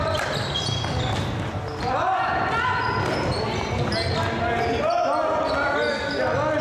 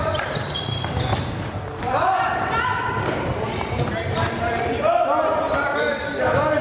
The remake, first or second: second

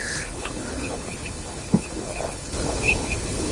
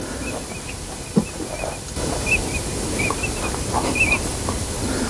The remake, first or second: first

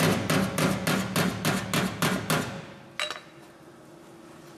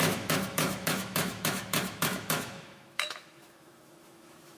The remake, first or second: second